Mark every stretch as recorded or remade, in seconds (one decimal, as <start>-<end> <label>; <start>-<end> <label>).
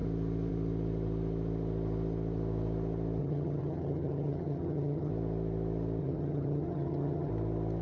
0.0-3.2 recorded; 3.2-5.1 remade; 5.1-6.0 recorded; 6.0-7.3 remade; 7.3-7.8 recorded